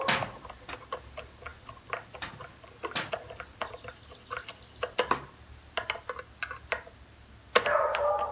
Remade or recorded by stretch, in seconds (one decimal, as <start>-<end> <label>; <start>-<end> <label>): 0.0-8.3 recorded